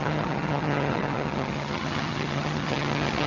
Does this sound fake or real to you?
fake